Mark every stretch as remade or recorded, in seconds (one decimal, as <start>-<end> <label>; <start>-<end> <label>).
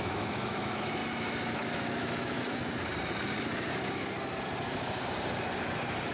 0.0-1.0 remade; 1.0-1.5 recorded; 1.5-2.6 remade; 2.6-6.1 recorded